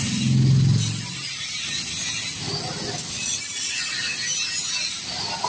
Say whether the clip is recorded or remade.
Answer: recorded